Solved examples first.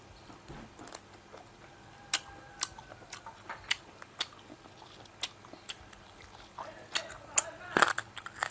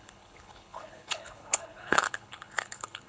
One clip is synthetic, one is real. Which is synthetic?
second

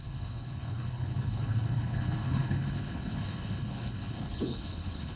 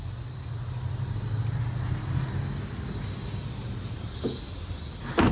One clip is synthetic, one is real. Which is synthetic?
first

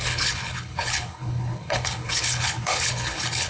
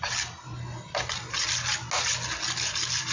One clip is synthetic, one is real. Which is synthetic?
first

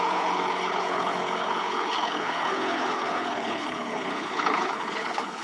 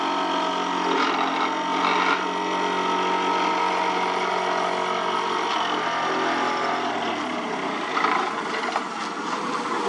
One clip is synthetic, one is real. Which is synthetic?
first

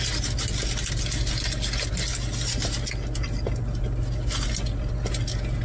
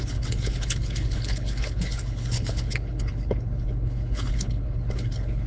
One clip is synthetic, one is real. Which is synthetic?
second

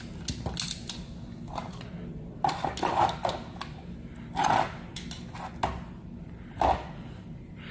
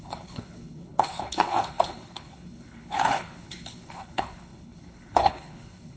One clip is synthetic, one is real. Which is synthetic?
second